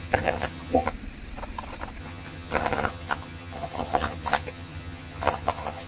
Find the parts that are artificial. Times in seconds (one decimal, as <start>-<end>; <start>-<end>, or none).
0.0-0.9; 2.0-5.9